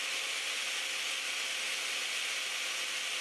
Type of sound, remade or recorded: recorded